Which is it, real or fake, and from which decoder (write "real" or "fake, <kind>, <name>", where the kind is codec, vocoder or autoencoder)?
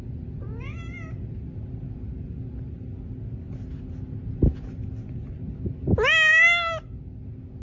real